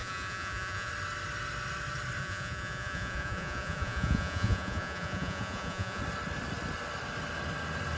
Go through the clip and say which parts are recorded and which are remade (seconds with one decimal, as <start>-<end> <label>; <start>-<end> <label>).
0.0-0.9 remade; 0.9-2.2 recorded; 2.2-6.0 remade; 6.0-8.0 recorded